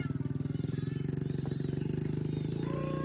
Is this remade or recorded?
recorded